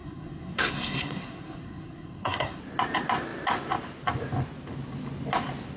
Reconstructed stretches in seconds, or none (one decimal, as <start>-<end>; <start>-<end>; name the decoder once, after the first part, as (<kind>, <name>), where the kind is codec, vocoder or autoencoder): 0.0-2.6 (codec, SNAC)